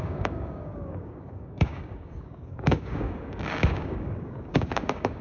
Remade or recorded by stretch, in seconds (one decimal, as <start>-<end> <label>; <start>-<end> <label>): 0.0-5.2 remade